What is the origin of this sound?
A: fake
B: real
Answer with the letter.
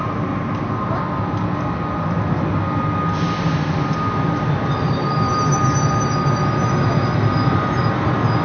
B